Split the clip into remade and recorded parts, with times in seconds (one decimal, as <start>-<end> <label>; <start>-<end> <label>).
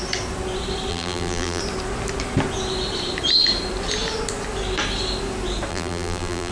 0.0-0.9 recorded; 0.9-1.6 remade; 1.6-5.7 recorded; 5.7-6.5 remade